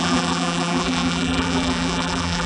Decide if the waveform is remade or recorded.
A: remade